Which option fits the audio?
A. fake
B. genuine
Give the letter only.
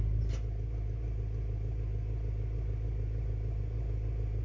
B